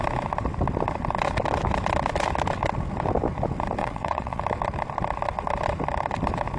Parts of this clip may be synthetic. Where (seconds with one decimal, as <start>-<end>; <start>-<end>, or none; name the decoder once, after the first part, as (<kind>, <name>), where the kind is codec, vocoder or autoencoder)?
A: 3.8-4.4 (vocoder, WaveNeXt)